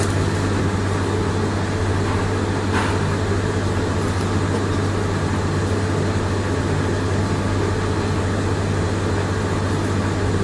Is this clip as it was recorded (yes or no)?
yes